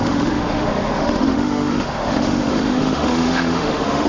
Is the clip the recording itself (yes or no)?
no